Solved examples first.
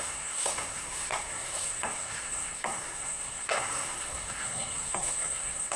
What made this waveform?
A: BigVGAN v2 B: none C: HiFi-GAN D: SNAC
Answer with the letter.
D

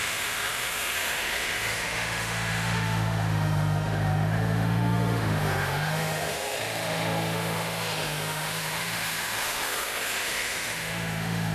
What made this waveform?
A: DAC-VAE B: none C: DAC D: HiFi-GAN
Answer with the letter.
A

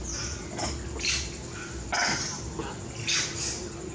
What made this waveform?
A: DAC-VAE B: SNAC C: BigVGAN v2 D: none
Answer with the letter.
D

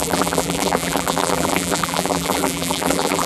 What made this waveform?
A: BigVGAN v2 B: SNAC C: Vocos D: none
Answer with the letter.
A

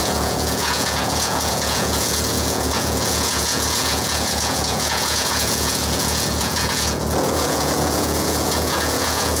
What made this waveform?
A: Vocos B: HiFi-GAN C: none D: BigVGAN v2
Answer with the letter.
A